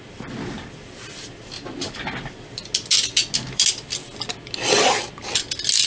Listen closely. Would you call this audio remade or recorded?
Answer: recorded